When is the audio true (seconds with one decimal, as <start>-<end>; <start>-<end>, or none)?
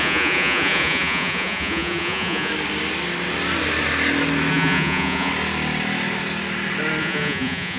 2.5-4.5; 5.3-7.0